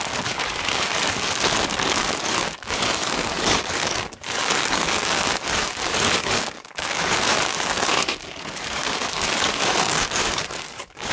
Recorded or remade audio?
remade